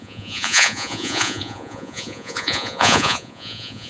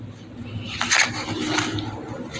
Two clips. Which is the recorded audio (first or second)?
second